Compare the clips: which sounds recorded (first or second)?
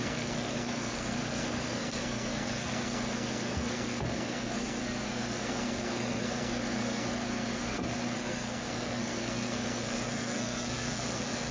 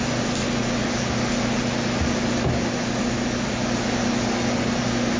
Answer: second